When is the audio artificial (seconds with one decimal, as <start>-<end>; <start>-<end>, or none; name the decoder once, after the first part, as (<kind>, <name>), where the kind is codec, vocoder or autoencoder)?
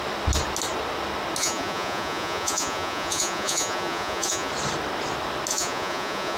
1.4-4.5 (vocoder, Vocos); 5.5-6.4